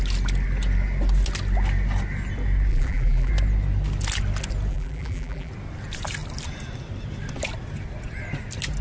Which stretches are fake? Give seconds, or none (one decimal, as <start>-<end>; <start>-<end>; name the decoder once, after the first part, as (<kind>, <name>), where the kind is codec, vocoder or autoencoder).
2.7-3.3 (vocoder, BigVGAN v2); 4.7-5.5